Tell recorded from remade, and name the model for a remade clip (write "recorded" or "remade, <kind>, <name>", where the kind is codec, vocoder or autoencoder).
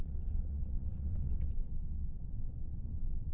remade, vocoder, WaveNeXt